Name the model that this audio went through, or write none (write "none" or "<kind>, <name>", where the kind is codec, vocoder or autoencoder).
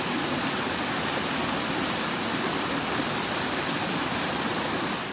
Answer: none